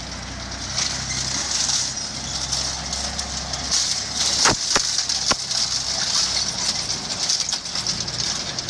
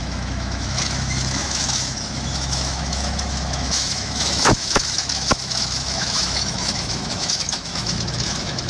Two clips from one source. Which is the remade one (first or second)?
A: second